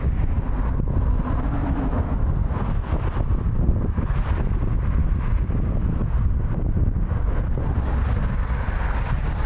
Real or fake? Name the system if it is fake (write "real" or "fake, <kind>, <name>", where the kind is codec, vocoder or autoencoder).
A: real